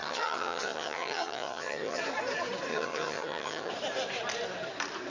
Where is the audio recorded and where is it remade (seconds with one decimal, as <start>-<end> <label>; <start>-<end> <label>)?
0.0-2.0 remade; 2.0-2.7 recorded; 2.7-3.7 remade; 3.7-5.1 recorded